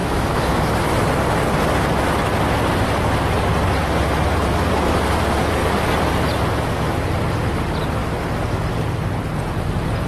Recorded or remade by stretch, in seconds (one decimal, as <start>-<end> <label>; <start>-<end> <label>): 0.0-0.7 remade; 0.7-10.1 recorded